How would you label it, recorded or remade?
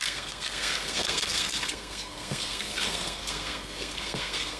remade